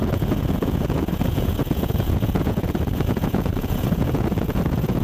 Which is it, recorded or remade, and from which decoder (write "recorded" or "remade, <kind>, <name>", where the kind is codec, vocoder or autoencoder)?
remade, vocoder, Vocos